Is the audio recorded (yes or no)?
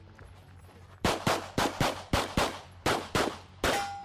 yes